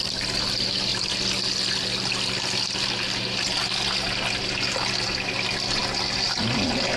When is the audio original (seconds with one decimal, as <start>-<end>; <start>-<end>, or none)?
0.0-7.0